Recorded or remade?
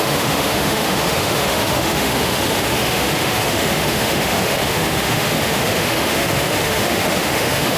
remade